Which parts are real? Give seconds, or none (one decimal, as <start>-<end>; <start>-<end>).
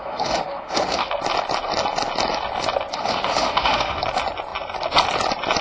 1.1-2.9; 4.0-5.6